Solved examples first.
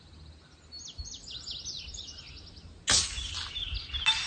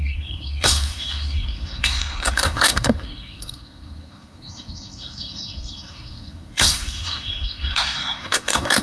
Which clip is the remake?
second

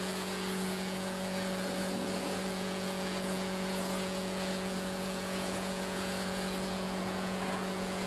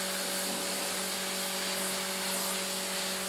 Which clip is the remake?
first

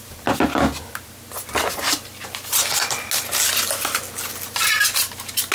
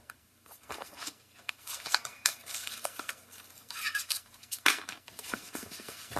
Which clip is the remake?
second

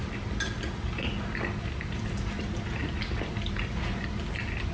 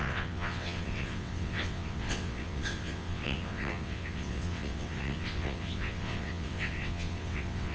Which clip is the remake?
second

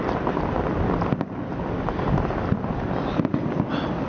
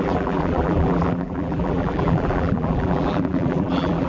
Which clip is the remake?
second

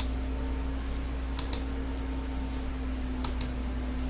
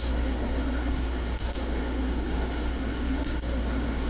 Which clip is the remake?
second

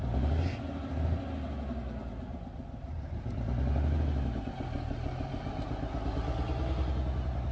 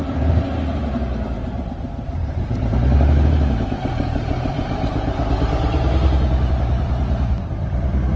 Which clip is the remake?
second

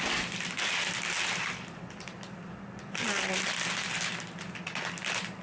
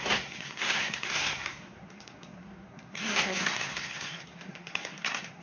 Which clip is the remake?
second